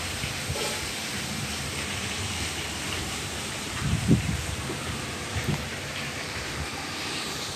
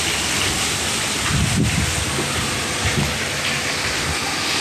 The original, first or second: second